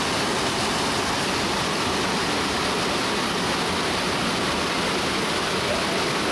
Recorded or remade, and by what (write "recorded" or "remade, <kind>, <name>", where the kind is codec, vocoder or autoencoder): recorded